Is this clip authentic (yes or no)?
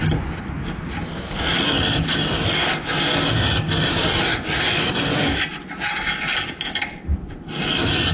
yes